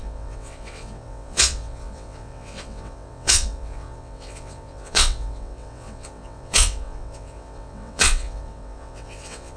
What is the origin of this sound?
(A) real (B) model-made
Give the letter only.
B